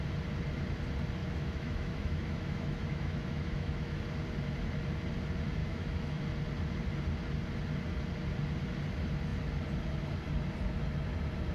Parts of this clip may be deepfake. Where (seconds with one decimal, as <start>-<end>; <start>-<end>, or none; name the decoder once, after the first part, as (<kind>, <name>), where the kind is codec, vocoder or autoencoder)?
1.2-4.0 (autoencoder, DAC-VAE); 5.6-6.2